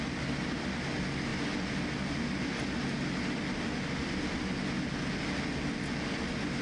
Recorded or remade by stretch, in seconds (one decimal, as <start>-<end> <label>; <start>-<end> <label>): 0.0-6.6 recorded